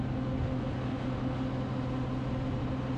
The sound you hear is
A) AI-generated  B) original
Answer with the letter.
B